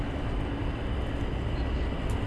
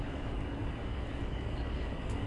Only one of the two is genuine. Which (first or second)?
first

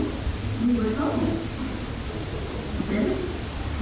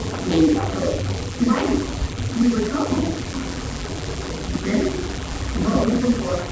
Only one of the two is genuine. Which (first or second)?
first